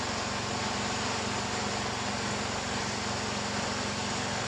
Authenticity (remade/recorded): recorded